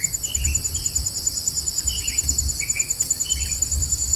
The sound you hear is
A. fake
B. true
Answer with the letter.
A